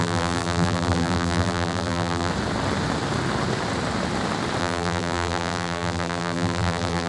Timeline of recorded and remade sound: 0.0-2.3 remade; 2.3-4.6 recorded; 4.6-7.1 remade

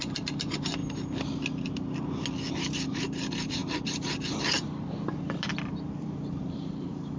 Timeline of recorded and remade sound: 0.0-0.8 remade; 0.8-2.7 recorded; 2.7-3.6 remade; 3.6-5.5 recorded; 5.5-7.2 remade